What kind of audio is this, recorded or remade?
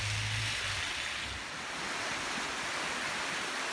recorded